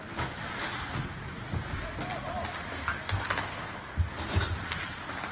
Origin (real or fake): real